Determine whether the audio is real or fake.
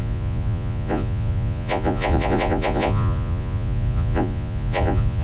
fake